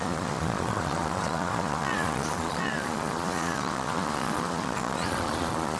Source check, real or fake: fake